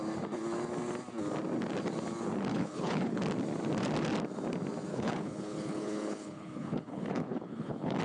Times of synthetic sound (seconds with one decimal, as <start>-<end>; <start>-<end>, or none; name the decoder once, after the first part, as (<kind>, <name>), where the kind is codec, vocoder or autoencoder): 2.5-3.2 (codec, HILCodec); 4.9-8.0